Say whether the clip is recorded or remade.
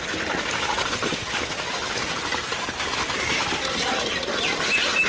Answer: remade